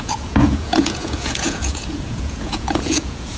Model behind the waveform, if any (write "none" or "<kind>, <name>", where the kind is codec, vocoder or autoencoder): vocoder, Vocos